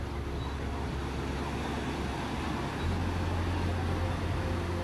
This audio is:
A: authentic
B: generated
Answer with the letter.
A